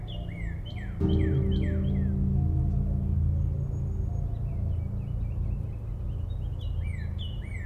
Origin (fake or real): real